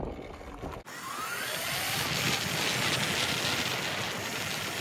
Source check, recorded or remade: recorded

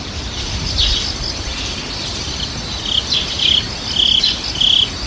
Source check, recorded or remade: recorded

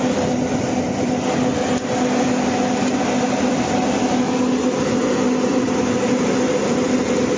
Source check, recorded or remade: recorded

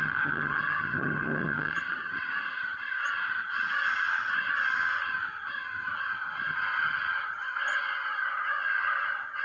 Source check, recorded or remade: remade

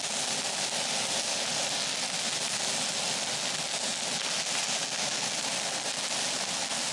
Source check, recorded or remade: recorded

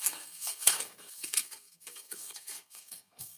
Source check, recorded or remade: remade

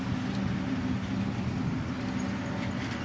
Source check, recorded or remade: recorded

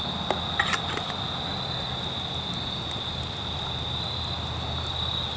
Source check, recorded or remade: recorded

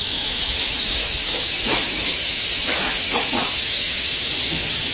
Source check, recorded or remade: remade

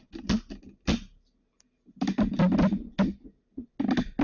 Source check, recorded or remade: recorded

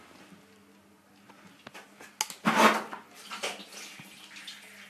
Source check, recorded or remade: recorded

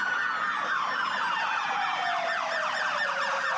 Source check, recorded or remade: recorded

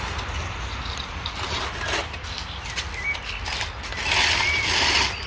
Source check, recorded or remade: recorded